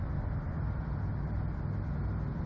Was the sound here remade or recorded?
recorded